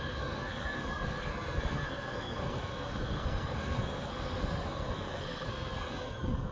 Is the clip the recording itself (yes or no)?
no